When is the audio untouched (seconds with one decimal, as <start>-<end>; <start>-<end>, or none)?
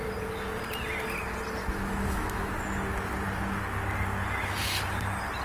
0.0-1.6; 2.5-5.4